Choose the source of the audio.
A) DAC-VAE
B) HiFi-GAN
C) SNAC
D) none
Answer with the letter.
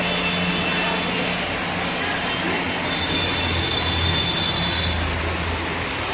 D